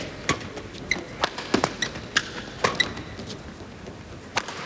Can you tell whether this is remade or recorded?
recorded